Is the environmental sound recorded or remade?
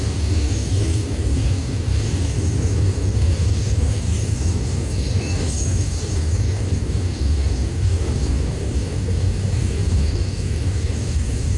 remade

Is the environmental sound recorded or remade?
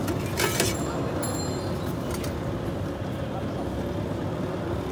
recorded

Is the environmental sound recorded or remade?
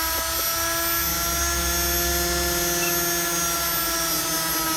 recorded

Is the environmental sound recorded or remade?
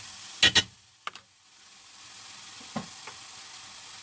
recorded